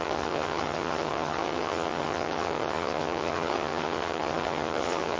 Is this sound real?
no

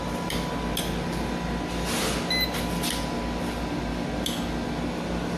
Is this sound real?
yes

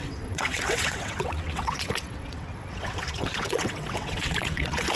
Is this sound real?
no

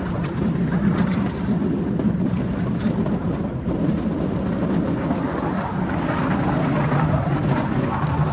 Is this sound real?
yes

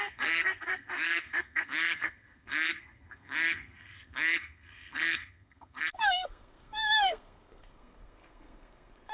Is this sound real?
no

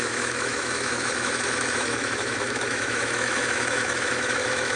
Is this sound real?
no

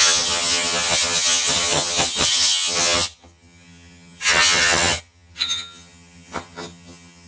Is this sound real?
no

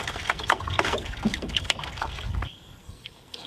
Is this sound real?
no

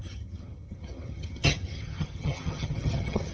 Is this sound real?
no